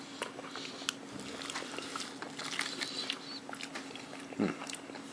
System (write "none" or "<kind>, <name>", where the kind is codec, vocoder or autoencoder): none